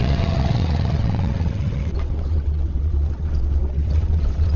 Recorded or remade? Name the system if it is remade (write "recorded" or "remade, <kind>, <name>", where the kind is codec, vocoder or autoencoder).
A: remade, vocoder, WaveNeXt